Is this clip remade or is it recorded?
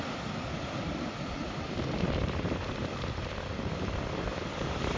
remade